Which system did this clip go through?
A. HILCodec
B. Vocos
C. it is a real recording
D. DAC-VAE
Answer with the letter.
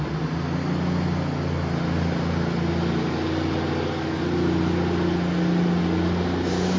C